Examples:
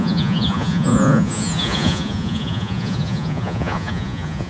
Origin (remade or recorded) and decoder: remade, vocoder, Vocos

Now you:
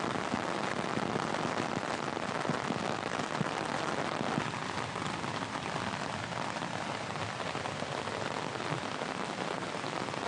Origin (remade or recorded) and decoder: recorded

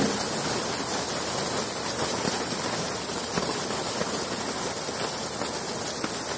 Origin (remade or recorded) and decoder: recorded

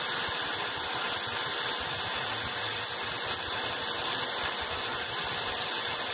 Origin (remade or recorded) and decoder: recorded